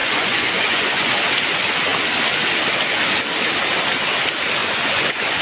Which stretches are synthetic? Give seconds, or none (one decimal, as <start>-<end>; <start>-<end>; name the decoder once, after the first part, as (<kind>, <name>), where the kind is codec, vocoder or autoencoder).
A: 0.0-1.1 (vocoder, Vocos); 4.6-5.4